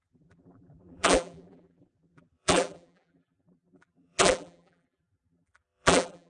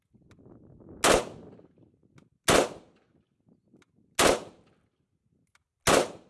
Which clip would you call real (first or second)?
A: second